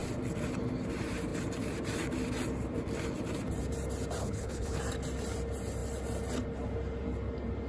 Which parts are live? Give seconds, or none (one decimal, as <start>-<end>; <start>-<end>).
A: 0.0-4.2; 4.8-7.7